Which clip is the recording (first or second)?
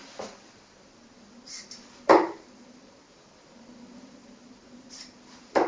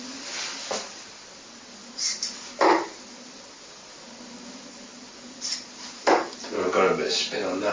second